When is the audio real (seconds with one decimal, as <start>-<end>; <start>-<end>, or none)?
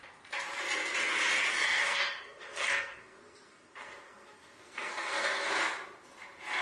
0.0-1.5; 5.5-6.6